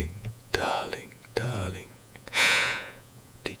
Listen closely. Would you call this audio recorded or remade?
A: remade